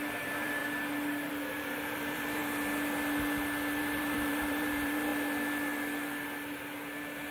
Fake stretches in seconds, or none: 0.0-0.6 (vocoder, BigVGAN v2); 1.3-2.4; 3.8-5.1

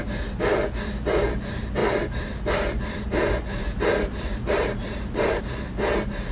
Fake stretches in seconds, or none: 1.8-5.4 (vocoder, BigVGAN v2)